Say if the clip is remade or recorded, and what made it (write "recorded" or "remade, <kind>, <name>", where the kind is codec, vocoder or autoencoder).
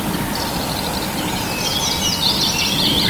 recorded